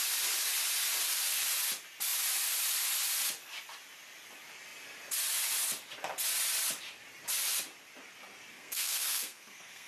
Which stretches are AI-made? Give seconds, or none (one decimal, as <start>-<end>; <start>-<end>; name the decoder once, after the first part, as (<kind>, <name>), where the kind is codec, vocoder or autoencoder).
8.5-9.9 (codec, SNAC)